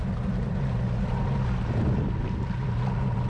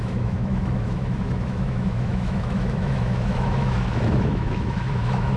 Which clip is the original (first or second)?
first